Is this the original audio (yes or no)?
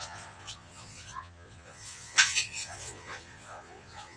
no